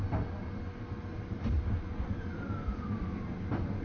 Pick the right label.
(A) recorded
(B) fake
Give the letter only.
A